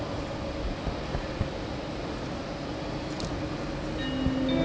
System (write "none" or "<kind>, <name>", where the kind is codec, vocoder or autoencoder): none